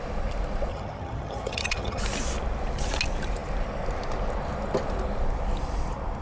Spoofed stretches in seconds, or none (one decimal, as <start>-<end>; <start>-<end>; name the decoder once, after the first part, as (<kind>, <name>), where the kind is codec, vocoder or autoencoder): 0.7-2.0 (vocoder, HiFi-GAN)